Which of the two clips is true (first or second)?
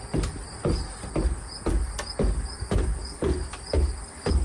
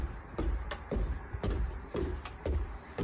first